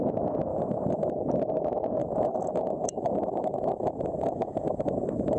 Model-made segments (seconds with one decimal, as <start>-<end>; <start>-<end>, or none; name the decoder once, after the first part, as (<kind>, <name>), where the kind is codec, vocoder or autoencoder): 0.5-1.1 (autoencoder, DAC-VAE); 2.0-5.4